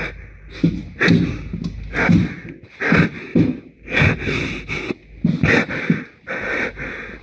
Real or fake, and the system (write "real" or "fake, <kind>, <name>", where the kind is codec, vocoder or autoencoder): real